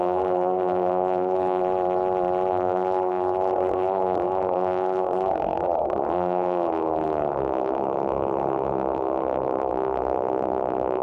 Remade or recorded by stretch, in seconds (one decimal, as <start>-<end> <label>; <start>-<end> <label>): 0.0-1.6 remade; 1.6-2.5 recorded; 2.5-11.0 remade